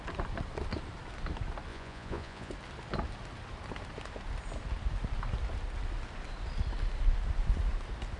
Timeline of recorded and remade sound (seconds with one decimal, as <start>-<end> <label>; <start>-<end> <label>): 0.0-1.7 recorded; 1.7-2.5 remade; 2.5-8.2 recorded